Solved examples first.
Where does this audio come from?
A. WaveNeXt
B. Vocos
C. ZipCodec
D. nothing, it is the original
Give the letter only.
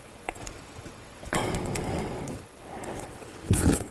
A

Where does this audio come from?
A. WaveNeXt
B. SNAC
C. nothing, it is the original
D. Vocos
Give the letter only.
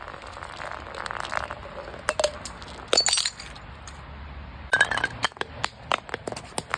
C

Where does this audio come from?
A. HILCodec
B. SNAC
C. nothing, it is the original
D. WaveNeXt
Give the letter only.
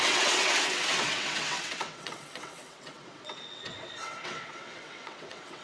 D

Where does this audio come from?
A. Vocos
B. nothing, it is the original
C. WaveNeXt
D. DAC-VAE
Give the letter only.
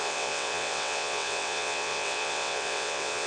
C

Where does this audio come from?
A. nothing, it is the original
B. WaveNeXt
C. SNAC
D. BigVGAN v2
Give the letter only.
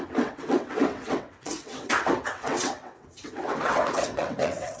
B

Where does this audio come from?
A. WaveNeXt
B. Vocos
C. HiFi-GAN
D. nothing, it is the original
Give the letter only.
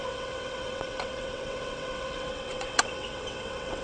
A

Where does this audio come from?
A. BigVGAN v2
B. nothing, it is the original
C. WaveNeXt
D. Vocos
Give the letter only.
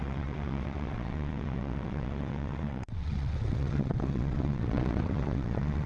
C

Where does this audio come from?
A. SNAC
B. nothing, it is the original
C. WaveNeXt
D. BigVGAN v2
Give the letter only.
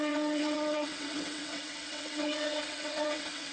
C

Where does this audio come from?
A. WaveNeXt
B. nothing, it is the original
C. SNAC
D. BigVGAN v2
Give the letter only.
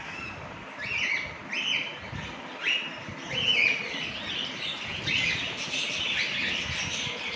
B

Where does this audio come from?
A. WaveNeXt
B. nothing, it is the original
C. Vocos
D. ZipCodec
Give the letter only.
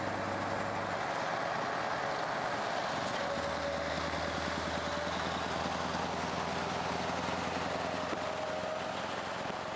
B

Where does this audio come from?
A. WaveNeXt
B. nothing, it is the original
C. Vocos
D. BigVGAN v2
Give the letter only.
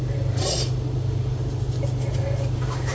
B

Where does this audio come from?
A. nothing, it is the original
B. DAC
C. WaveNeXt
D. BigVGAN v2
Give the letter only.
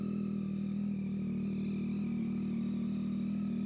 A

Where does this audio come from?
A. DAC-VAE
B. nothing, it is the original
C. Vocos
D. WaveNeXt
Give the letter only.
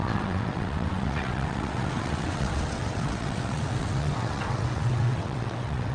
D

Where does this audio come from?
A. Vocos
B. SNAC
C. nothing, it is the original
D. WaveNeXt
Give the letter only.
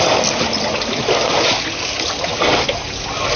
C